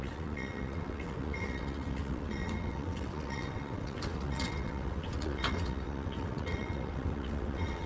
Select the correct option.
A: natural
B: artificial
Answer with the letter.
B